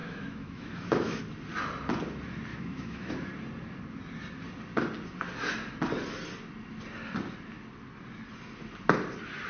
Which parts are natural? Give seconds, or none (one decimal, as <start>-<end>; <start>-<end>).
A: 1.2-2.5; 3.1-9.5